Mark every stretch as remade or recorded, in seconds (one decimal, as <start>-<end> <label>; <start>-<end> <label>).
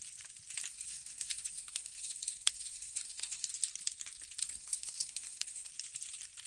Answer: 0.0-0.7 recorded; 0.7-3.5 remade; 3.5-4.4 recorded; 4.4-5.7 remade; 5.7-6.5 recorded